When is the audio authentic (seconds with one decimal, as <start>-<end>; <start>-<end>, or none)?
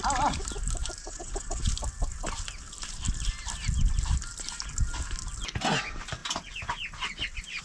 0.0-1.0; 1.6-7.6